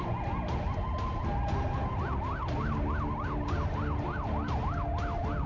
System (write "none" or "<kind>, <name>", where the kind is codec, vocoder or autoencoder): none